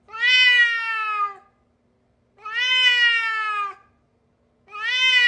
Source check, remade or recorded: recorded